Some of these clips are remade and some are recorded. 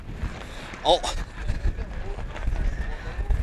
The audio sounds recorded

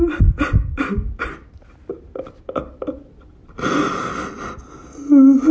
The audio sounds recorded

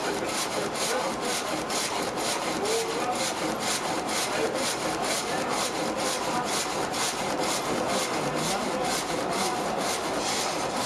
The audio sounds recorded